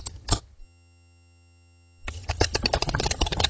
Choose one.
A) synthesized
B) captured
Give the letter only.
A